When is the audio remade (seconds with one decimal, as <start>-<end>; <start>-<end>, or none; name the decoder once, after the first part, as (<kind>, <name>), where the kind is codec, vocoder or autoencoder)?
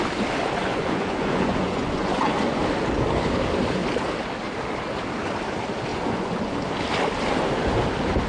0.6-2.6 (vocoder, Vocos); 5.9-6.6